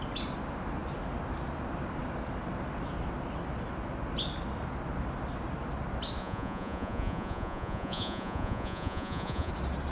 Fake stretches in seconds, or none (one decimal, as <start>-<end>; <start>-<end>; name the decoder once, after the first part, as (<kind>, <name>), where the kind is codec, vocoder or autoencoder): 6.2-9.5 (vocoder, Vocos)